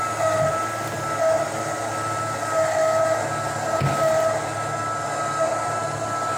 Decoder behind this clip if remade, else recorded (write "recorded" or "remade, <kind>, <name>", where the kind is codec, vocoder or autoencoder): recorded